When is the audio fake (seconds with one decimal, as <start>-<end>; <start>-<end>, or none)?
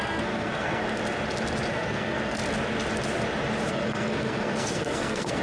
0.0-0.8; 1.7-2.4; 3.7-5.4